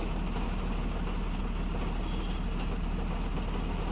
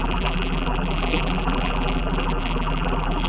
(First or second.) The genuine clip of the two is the first